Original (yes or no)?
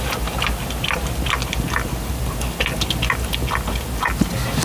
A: yes